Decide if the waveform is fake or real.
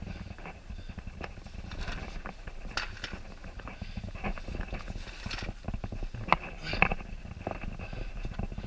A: real